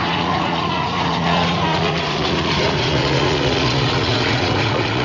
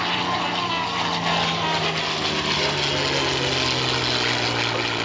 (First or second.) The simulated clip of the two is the first